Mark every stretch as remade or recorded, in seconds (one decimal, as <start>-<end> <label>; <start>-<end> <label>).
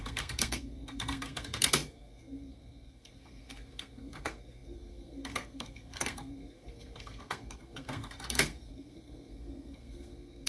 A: 0.0-10.5 remade